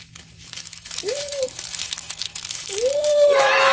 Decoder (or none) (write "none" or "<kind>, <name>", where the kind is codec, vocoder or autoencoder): autoencoder, DAC-VAE